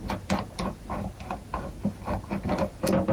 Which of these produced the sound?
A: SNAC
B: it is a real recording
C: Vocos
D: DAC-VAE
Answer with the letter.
B